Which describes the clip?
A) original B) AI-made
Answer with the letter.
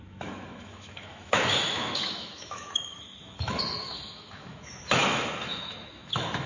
B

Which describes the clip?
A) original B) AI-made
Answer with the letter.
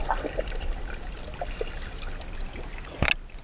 A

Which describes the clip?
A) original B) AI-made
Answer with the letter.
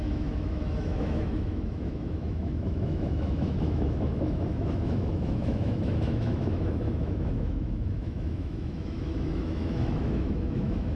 B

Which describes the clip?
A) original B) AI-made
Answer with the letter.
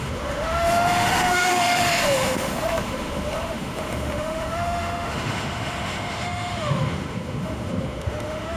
B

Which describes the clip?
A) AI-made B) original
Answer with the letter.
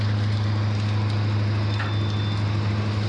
B